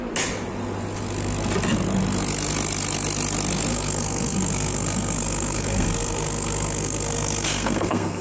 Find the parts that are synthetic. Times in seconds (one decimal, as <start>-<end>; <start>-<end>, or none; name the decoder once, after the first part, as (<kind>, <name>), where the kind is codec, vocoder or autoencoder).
3.7-8.2 (codec, SNAC)